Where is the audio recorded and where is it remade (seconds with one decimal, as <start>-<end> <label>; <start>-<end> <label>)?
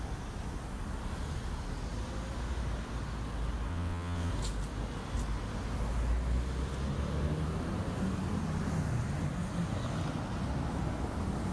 0.0-3.7 recorded; 3.7-4.3 remade; 4.3-11.5 recorded